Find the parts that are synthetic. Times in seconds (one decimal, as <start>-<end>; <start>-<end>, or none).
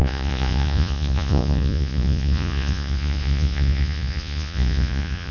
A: 0.0-5.3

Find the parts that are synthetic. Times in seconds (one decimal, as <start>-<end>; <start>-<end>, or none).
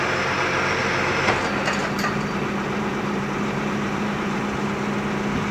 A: 0.8-1.3; 1.8-4.4